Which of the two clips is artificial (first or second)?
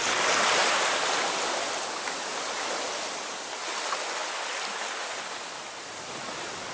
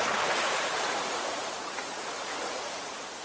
second